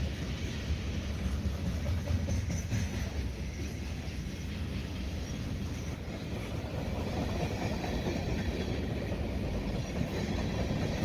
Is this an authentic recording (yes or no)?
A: yes